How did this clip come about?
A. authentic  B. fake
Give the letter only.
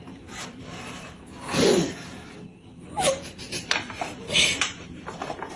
B